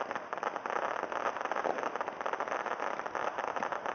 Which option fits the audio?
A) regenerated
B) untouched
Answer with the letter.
B